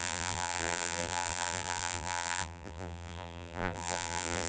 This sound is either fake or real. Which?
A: fake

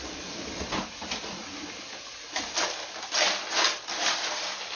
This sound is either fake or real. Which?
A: real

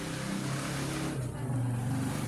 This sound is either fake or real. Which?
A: real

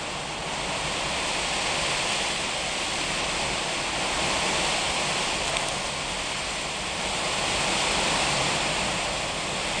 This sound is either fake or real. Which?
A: real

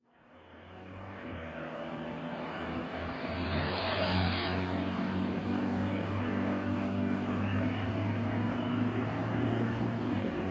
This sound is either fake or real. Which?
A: fake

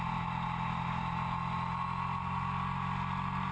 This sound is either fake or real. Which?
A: real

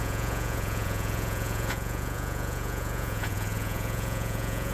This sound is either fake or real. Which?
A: fake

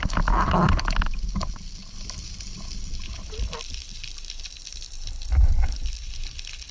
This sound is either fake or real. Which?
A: real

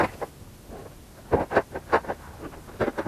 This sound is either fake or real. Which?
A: real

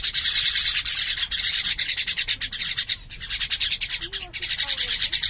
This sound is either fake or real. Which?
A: real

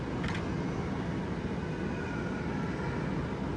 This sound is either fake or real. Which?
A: real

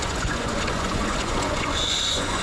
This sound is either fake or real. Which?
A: fake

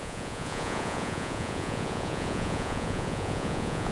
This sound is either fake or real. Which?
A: fake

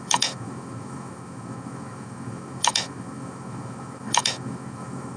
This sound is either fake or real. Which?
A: fake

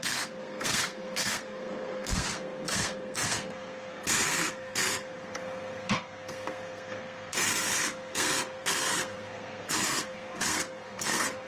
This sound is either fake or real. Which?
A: fake